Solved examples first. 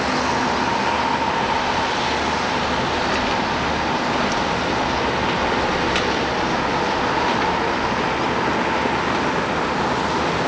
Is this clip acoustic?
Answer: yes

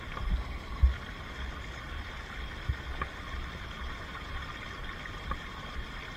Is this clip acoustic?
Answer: yes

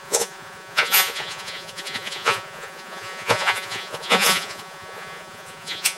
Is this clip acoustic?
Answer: no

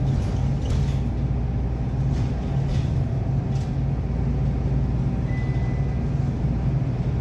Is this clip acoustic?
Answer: yes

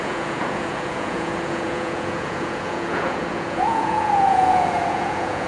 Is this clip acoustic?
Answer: no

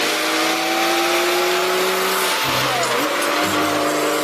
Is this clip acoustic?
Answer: yes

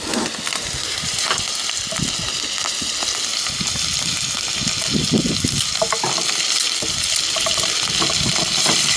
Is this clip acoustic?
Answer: yes